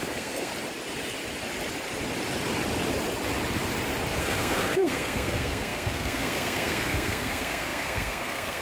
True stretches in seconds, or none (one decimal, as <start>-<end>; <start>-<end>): 0.5-4.2